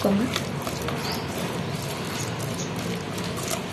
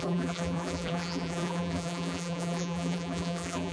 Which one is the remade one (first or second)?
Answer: second